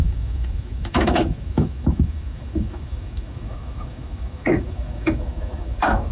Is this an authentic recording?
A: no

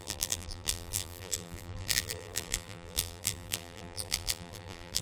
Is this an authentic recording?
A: no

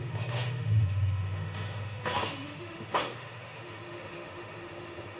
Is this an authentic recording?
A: no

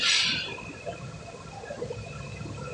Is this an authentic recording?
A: no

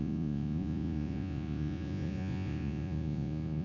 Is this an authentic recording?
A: no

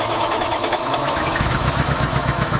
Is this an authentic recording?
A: no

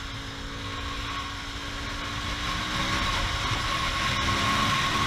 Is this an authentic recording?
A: yes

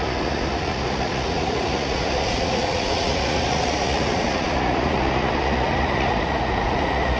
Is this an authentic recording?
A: no